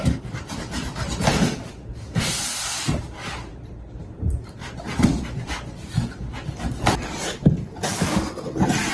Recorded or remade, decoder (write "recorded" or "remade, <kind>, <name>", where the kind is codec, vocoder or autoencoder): remade, vocoder, BigVGAN v2